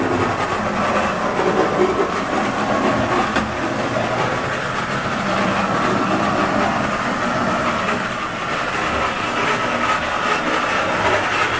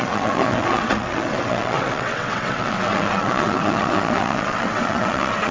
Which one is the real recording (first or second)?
first